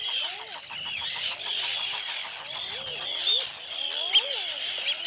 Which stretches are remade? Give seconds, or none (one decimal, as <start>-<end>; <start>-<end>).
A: none